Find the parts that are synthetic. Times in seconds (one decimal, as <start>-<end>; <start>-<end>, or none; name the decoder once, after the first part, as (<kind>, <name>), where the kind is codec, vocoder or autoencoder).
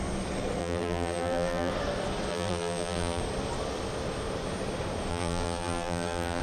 0.6-1.7 (vocoder, BigVGAN v2); 2.3-3.2; 5.1-6.4